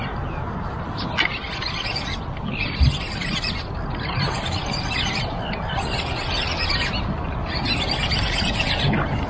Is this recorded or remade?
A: recorded